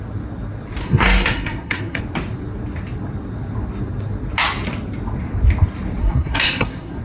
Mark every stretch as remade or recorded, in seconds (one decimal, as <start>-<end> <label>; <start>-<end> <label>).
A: 0.0-0.8 recorded; 0.8-2.0 remade; 2.0-6.0 recorded; 6.0-7.0 remade